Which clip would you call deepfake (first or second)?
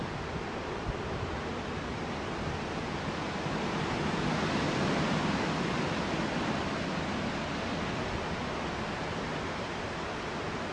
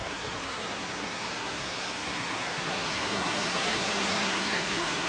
second